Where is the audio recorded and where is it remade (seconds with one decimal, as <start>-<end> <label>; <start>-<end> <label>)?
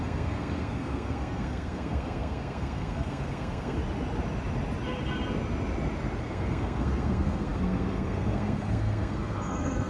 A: 0.0-3.8 remade; 3.8-6.2 recorded; 6.2-9.9 remade